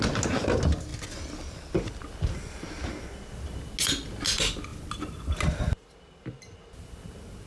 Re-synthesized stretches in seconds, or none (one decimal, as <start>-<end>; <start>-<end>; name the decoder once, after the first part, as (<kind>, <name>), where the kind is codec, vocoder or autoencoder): none